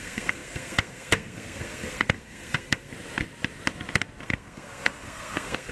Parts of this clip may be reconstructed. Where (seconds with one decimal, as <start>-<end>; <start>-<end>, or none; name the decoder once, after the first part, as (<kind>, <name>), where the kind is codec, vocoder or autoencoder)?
0.0-2.9 (codec, SNAC); 4.2-5.7